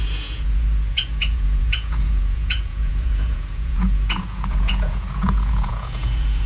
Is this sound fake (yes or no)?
yes